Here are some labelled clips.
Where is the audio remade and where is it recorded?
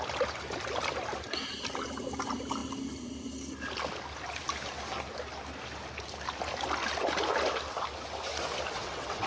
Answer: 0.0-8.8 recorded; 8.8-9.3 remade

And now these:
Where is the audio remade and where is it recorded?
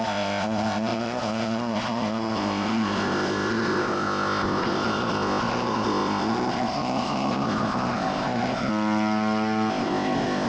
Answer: 0.0-8.7 remade; 8.7-9.7 recorded; 9.7-10.5 remade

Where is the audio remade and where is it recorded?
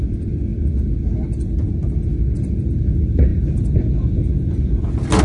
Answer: 0.0-3.3 recorded; 3.3-4.7 remade; 4.7-5.2 recorded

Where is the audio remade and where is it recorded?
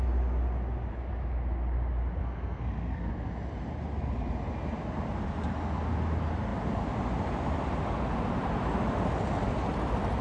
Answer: 0.0-2.2 recorded; 2.2-3.1 remade; 3.1-10.2 recorded